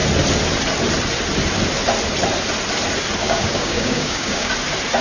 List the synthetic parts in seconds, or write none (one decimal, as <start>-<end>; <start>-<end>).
3.2-4.5